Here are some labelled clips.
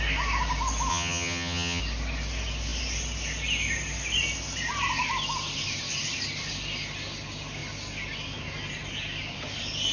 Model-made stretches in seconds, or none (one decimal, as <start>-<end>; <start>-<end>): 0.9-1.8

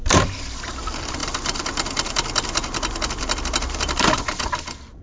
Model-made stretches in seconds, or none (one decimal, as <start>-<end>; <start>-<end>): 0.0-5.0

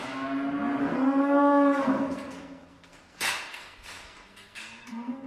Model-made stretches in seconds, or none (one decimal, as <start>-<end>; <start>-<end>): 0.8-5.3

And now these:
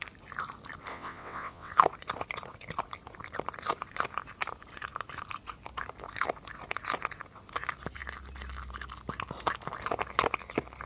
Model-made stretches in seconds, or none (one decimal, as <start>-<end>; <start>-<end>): 0.9-1.7

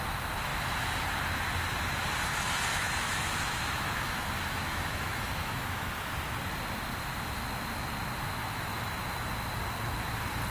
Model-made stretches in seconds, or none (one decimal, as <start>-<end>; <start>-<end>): 2.7-5.9; 8.4-9.3